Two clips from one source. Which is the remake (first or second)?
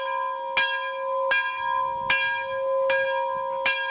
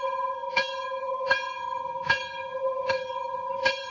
second